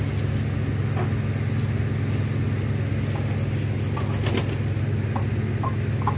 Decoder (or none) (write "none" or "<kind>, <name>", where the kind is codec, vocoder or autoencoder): none